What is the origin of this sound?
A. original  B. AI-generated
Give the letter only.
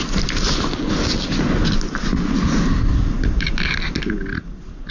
A